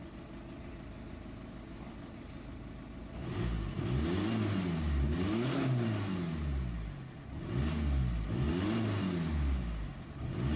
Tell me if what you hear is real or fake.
real